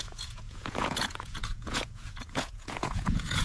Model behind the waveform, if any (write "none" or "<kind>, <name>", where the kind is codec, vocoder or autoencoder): vocoder, Vocos